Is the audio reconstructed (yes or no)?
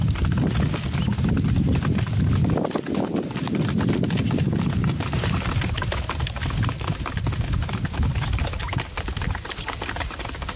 no